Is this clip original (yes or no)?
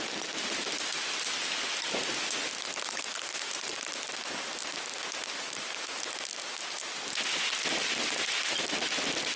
yes